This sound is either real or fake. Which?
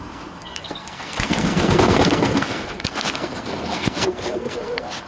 fake